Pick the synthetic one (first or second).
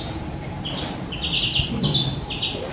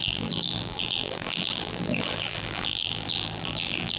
second